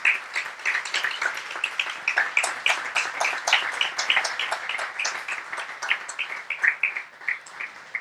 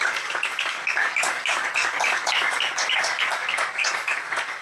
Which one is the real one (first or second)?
first